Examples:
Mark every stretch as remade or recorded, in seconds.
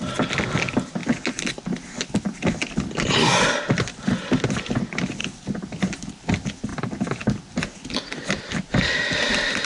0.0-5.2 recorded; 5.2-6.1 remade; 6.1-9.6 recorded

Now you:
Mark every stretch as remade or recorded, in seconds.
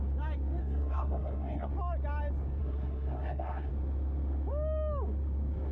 0.0-0.6 recorded; 0.6-1.7 remade; 1.7-2.6 recorded; 2.6-3.7 remade; 3.7-5.7 recorded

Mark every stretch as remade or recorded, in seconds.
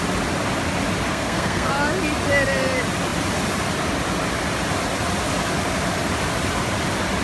0.0-1.1 recorded; 1.1-1.7 remade; 1.7-7.2 recorded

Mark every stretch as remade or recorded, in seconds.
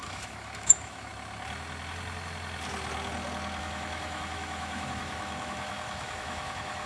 0.0-1.1 remade; 1.1-3.6 recorded; 3.6-6.9 remade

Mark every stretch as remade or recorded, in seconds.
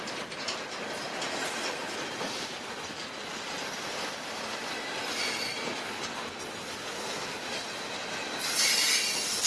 0.0-9.5 recorded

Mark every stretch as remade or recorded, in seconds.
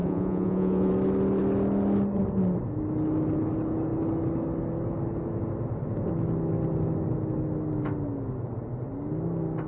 0.0-0.9 remade; 0.9-9.7 recorded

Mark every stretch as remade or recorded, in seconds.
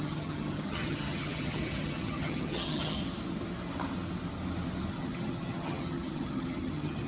0.0-3.0 remade; 3.0-4.9 recorded; 4.9-7.1 remade